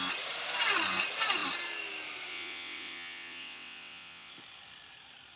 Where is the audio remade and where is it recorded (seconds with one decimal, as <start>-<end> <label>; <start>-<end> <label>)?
0.0-2.3 recorded; 2.3-4.3 remade; 4.3-5.4 recorded